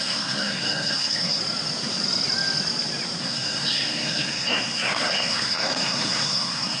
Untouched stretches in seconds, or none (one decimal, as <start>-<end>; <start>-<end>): 1.4-3.2